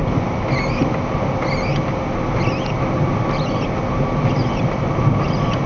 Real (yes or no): yes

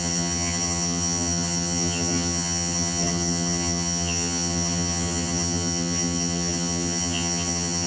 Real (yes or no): no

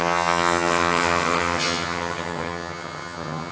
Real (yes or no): no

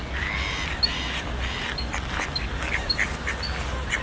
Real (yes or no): yes